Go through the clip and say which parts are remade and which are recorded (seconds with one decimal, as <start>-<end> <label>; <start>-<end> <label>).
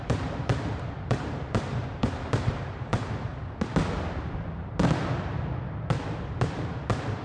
0.0-3.3 remade; 3.3-7.2 recorded